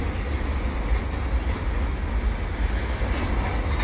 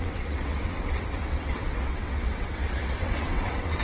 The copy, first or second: second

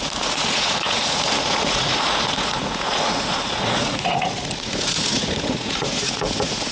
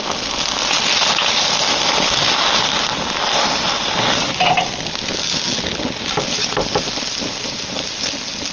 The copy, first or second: first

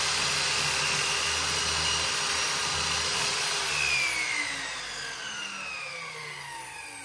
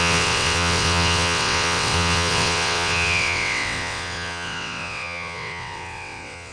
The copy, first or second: second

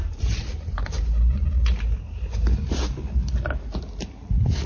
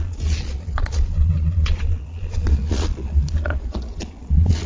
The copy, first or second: second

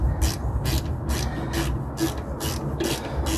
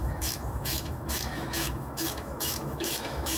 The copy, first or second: second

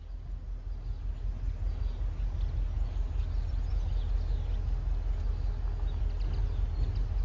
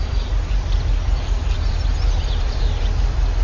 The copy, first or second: second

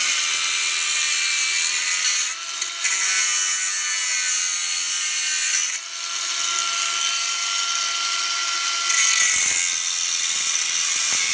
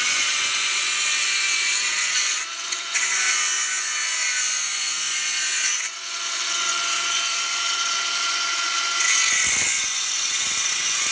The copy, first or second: second